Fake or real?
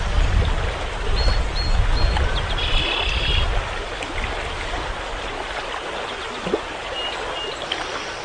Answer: real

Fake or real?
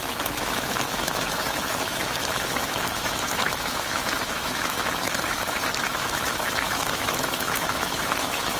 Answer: fake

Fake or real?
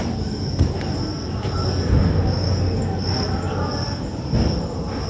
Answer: real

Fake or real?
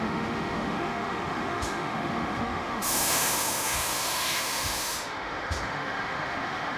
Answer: fake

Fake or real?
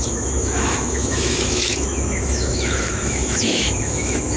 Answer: fake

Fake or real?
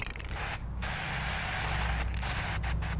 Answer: real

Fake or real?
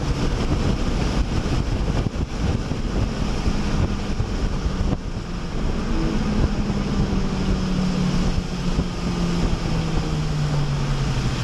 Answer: real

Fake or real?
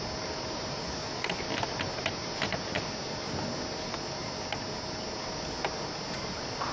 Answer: real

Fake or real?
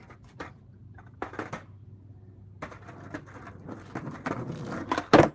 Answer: real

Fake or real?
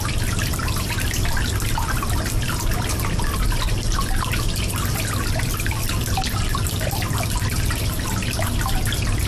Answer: real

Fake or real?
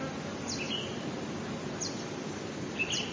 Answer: real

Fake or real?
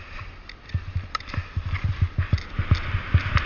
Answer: real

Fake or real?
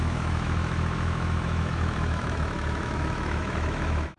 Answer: fake